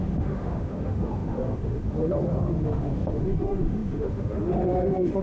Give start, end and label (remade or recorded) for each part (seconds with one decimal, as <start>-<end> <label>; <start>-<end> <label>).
0.0-5.2 remade